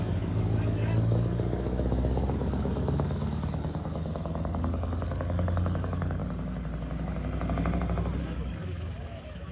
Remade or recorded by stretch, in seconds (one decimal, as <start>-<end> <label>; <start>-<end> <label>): 0.0-6.2 remade; 6.2-8.2 recorded; 8.2-9.5 remade